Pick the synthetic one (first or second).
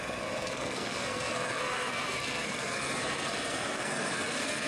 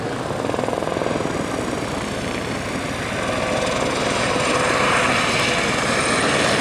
first